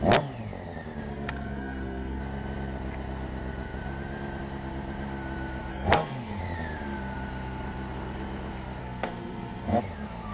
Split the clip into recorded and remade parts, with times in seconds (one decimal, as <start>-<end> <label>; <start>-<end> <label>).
0.0-1.1 recorded; 1.1-2.2 remade; 2.2-5.7 recorded; 5.7-6.4 remade; 6.4-8.8 recorded; 8.8-9.8 remade; 9.8-10.3 recorded